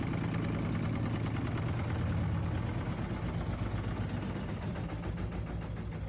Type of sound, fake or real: real